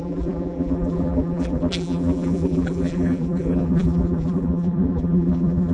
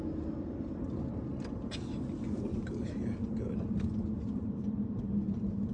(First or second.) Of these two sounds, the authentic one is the second